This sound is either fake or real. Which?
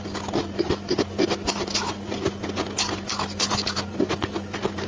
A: real